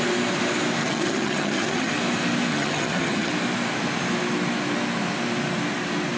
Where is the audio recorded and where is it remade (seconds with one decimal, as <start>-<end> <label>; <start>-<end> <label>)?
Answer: 0.0-0.8 recorded; 0.8-1.9 remade; 1.9-2.5 recorded; 2.5-3.3 remade; 3.3-6.2 recorded